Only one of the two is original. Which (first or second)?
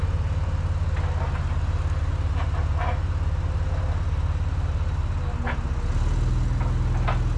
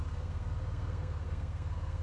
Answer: first